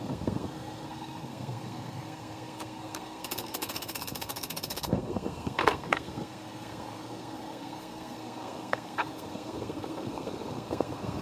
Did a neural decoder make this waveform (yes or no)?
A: yes